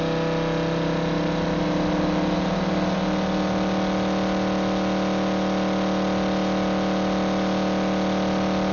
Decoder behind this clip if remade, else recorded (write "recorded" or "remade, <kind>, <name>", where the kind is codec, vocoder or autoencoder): recorded